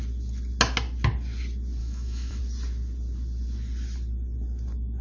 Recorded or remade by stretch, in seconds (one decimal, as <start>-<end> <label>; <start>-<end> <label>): 0.0-1.8 recorded; 1.8-2.4 remade; 2.4-5.0 recorded